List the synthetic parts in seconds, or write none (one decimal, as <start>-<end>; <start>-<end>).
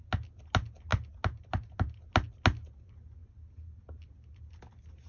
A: none